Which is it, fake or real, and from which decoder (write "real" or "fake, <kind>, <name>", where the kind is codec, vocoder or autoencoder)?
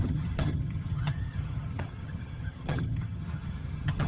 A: fake, vocoder, HiFi-GAN